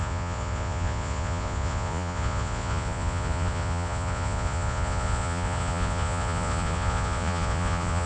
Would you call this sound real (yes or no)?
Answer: no